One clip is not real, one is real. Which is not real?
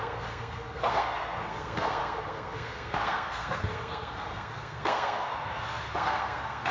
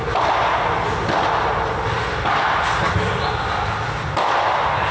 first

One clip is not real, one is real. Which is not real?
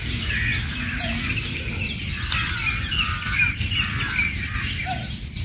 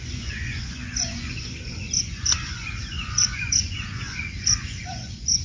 second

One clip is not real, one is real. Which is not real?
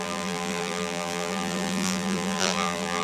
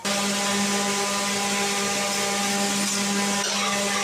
first